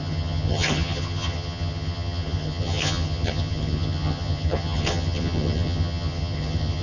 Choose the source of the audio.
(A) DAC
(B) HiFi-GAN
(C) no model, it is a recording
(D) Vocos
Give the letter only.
B